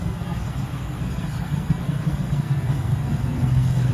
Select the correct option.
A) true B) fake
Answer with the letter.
B